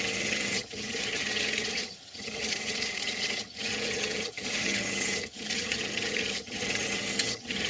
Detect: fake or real fake